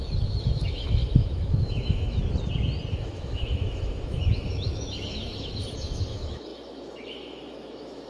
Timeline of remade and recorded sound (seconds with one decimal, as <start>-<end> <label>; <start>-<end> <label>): 0.0-2.2 remade; 2.2-2.9 recorded; 2.9-8.1 remade